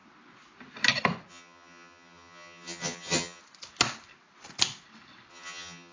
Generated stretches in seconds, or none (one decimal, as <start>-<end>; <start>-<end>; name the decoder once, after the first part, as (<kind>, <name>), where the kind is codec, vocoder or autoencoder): 1.3-3.4 (vocoder, HiFi-GAN); 5.3-5.9